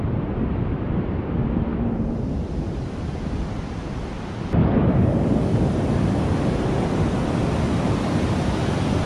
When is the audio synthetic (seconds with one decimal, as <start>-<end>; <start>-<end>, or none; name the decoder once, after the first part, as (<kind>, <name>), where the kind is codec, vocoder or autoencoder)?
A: 4.6-5.5 (codec, DAC)